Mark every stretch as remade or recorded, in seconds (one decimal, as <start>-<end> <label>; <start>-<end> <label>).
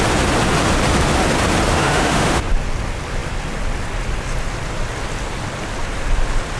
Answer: 0.0-1.7 recorded; 1.7-2.5 remade; 2.5-6.6 recorded